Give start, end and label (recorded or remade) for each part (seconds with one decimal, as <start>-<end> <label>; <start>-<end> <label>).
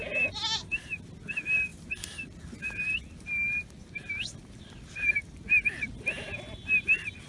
0.0-1.7 recorded; 1.7-5.1 remade; 5.1-7.3 recorded